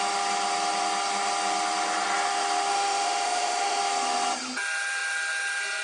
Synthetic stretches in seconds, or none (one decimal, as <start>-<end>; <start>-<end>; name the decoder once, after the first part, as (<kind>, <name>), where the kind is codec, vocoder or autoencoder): 2.7-3.8 (autoencoder, DAC-VAE)